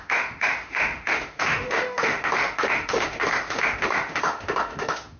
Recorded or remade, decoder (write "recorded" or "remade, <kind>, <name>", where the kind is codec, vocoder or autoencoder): remade, autoencoder, DAC-VAE